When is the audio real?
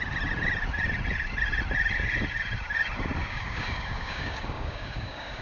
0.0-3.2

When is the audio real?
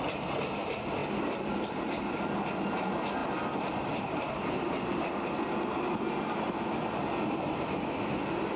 0.0-8.6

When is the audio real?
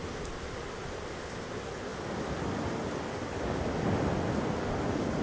0.0-5.2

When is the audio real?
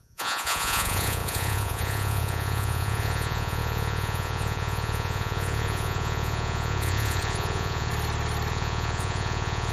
7.9-8.5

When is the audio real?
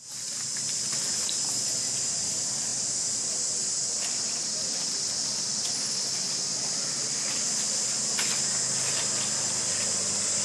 0.0-10.4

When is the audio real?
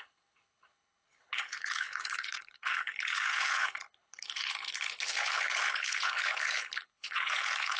none